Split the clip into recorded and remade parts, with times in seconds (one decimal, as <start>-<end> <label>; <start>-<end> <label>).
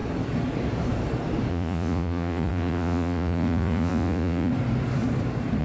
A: 0.0-1.5 recorded; 1.5-4.5 remade; 4.5-5.6 recorded